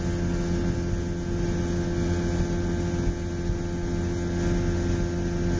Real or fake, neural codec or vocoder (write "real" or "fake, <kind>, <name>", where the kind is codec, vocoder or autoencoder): real